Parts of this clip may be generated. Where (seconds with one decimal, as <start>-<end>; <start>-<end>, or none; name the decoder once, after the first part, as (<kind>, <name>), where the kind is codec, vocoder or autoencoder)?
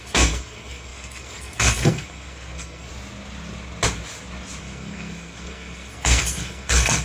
0.0-2.9 (codec, SNAC); 4.6-7.0